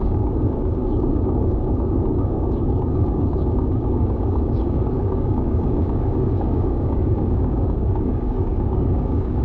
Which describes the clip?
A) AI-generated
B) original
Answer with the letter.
A